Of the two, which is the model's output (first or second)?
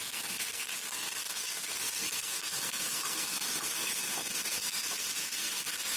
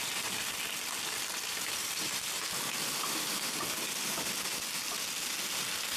first